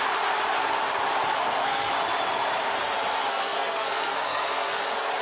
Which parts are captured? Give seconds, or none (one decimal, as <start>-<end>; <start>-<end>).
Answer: 0.0-1.3; 1.9-3.3; 4.8-5.2